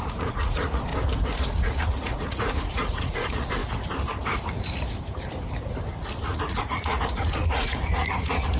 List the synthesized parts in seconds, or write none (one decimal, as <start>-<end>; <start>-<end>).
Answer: 0.0-0.9; 1.4-3.6; 6.2-8.6